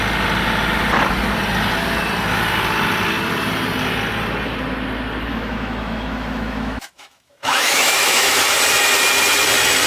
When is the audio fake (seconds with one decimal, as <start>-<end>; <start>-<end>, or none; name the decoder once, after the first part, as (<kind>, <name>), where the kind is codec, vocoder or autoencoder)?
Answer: 5.3-8.4 (autoencoder, DAC-VAE)